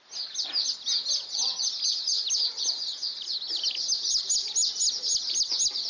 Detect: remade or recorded recorded